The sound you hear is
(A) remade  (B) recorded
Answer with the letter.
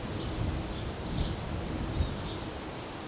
B